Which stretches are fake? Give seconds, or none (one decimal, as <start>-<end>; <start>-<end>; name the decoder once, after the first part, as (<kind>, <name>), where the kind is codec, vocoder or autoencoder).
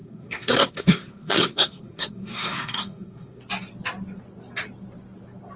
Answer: 0.0-3.4 (codec, SNAC)